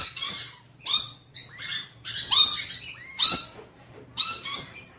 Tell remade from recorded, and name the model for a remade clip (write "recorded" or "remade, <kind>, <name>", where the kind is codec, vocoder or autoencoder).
remade, vocoder, BigVGAN v2